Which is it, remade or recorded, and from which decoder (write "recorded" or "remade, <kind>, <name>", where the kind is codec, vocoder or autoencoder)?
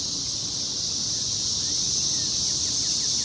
recorded